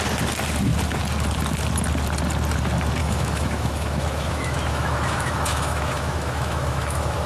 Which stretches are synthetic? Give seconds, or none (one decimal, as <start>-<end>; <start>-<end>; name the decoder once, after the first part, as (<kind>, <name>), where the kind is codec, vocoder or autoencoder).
3.0-7.3 (autoencoder, DAC-VAE)

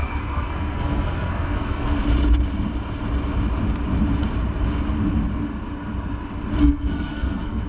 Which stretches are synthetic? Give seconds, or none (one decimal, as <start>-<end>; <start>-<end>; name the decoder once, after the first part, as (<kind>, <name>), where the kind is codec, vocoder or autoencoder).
0.0-2.0 (codec, SNAC); 6.6-7.7

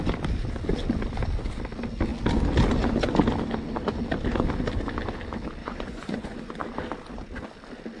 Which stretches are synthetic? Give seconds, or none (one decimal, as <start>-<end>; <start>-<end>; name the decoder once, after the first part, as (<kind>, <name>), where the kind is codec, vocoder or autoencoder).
5.6-6.5 (vocoder, Vocos)